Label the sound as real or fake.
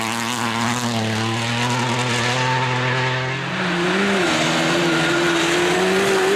real